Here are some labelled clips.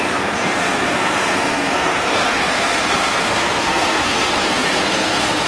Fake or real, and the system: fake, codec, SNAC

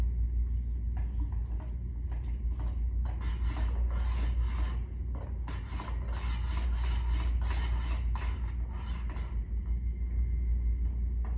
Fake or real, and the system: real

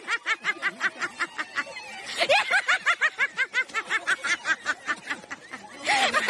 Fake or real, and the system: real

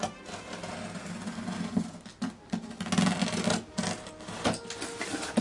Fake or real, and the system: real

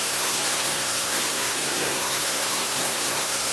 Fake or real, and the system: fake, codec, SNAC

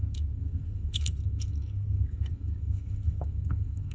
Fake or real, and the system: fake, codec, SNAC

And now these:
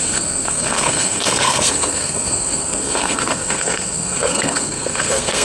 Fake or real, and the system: fake, codec, SNAC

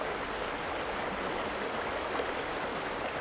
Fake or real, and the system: real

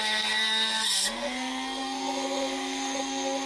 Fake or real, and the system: fake, codec, SNAC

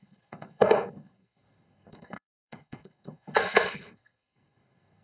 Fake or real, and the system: fake, codec, SNAC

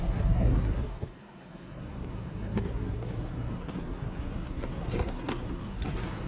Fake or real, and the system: fake, codec, SNAC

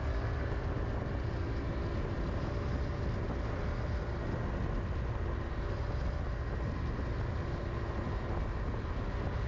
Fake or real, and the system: real